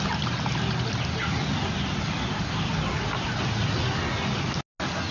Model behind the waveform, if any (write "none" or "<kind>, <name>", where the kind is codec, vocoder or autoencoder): none